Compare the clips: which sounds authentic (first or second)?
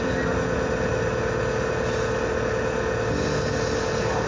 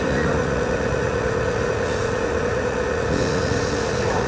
first